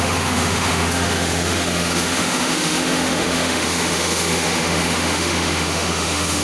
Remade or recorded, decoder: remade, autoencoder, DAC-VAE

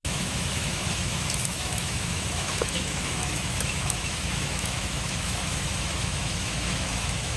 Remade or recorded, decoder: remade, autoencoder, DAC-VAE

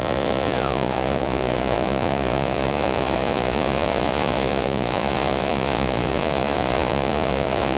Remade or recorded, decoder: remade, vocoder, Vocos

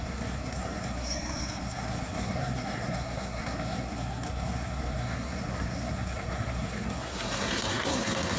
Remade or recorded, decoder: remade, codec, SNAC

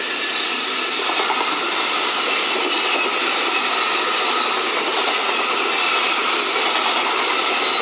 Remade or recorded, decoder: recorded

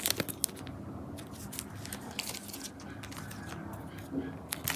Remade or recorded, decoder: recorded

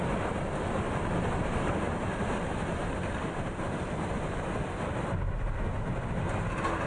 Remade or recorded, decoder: recorded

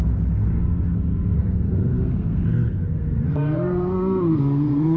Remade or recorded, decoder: remade, codec, SNAC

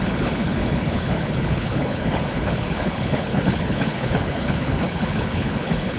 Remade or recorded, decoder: remade, codec, HILCodec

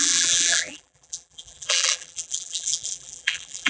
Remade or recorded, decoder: remade, vocoder, BigVGAN v2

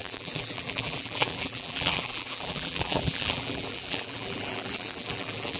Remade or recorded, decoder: remade, vocoder, BigVGAN v2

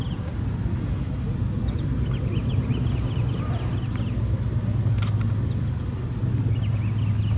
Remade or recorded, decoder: recorded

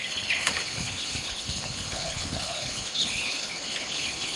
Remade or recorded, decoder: remade, codec, HILCodec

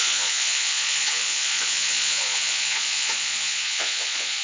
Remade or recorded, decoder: remade, vocoder, Vocos